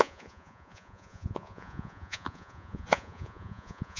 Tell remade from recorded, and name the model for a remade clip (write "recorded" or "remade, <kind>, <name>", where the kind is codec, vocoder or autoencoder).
remade, vocoder, Vocos